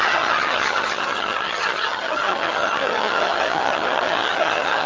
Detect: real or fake fake